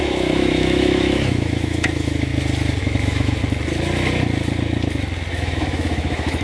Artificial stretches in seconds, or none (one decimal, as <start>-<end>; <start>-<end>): 0.0-2.3; 2.8-3.4; 5.3-6.4